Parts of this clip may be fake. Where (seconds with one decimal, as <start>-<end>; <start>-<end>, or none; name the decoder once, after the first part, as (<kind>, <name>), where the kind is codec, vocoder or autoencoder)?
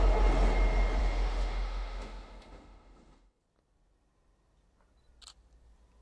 1.0-3.4 (autoencoder, DAC-VAE)